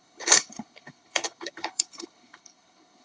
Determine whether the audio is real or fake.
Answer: fake